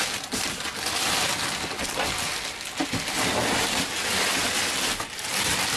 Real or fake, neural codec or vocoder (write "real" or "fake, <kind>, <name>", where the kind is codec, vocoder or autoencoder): real